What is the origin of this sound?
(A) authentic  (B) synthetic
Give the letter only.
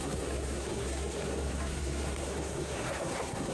B